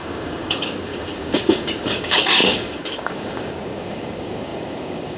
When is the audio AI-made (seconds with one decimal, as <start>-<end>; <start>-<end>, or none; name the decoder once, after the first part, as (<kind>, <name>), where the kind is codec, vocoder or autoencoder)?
0.0-5.2 (codec, DAC)